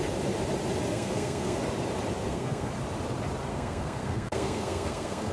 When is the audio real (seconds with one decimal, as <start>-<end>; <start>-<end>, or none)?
0.0-0.9; 1.6-2.2; 2.7-3.5